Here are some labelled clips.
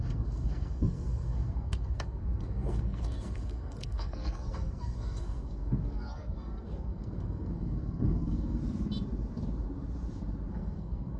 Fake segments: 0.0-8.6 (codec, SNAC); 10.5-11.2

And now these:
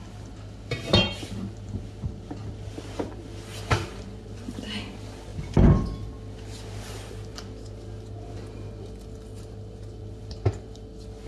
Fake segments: none

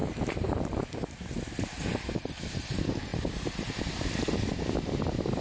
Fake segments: 0.0-5.4 (vocoder, BigVGAN v2)

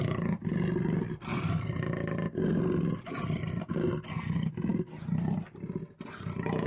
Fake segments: none

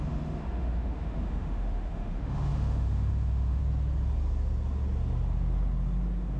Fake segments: 0.0-3.6 (autoencoder, DAC-VAE)

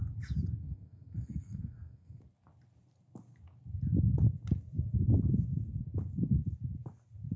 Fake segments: 0.6-2.2 (codec, SNAC)

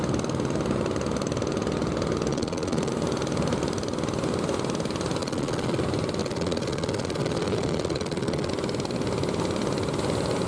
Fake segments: 2.3-2.9 (vocoder, Vocos); 5.2-5.8; 6.2-8.5